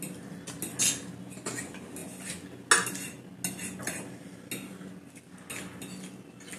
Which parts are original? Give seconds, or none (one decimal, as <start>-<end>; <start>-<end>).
0.0-6.6